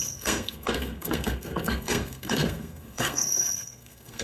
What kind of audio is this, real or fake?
fake